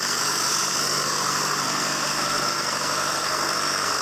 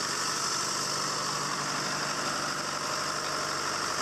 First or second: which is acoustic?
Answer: second